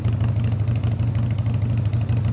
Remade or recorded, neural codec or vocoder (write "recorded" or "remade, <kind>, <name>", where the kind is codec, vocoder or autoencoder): recorded